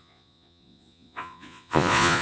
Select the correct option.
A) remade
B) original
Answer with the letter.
A